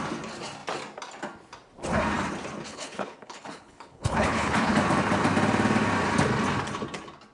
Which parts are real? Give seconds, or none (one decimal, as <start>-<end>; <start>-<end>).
0.0-2.7; 4.7-7.3